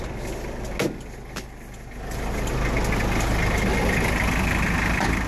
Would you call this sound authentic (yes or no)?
yes